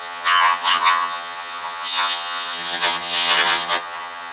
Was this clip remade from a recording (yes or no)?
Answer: yes